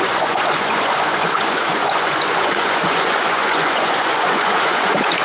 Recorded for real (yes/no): no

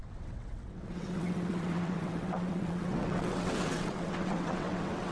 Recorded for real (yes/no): no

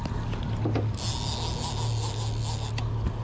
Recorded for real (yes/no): yes